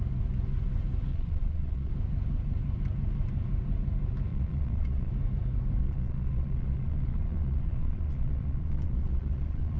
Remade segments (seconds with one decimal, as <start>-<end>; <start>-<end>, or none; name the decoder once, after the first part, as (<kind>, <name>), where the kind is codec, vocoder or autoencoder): 1.1-1.9 (vocoder, Vocos); 4.3-5.1; 5.8-9.8